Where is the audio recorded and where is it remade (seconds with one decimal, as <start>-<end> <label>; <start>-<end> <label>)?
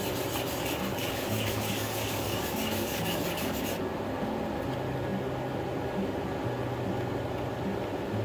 0.0-0.9 recorded; 0.9-3.6 remade; 3.6-8.2 recorded